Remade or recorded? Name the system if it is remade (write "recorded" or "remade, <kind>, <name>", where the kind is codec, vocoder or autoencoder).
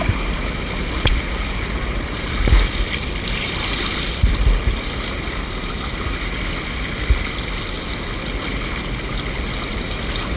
recorded